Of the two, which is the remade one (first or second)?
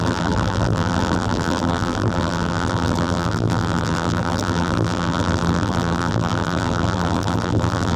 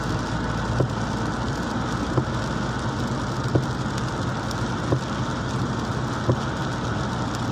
first